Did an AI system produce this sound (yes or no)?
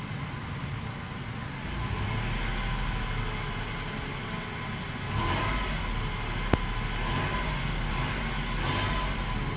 no